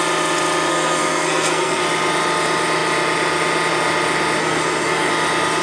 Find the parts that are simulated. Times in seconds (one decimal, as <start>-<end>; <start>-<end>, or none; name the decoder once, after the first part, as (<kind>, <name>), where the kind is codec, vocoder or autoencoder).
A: 0.7-1.8 (codec, SNAC); 4.4-5.1